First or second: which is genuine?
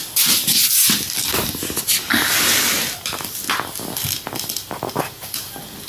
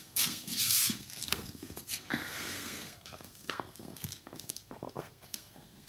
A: first